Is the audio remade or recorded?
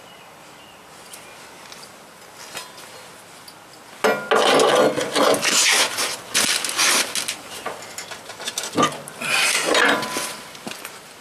recorded